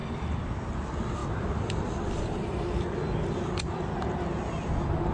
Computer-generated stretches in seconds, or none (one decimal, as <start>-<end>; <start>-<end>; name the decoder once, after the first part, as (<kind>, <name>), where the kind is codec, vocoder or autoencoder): 0.7-5.1 (vocoder, BigVGAN v2)